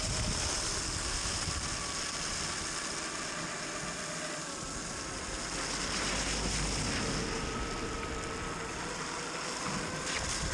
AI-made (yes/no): no